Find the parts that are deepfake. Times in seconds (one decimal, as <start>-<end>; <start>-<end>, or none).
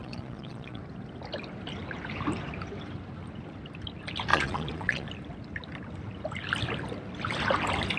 0.0-0.8; 4.3-5.1